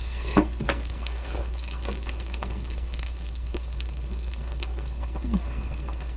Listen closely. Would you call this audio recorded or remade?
remade